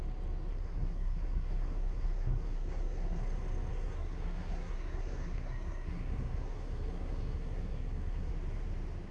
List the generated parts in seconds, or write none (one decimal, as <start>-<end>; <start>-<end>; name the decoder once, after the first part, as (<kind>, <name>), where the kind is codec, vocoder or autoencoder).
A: 0.5-3.2 (codec, SNAC); 3.7-8.3